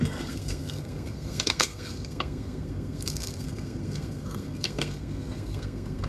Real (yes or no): no